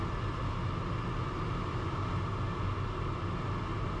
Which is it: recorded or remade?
recorded